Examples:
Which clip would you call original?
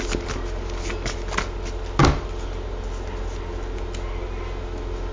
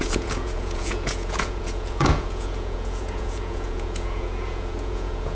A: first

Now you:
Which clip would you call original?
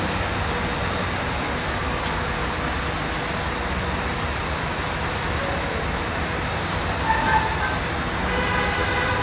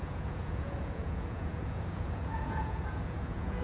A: first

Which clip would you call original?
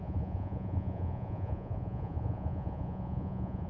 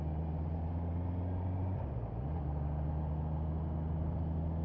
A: second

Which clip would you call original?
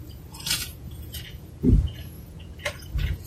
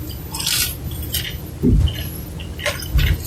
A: second